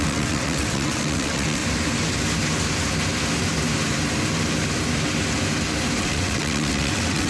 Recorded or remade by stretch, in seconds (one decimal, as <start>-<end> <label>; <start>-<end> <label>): 0.0-1.6 remade; 1.6-6.0 recorded; 6.0-7.3 remade